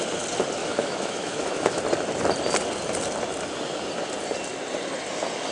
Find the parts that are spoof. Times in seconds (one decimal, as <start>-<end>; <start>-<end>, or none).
0.6-1.8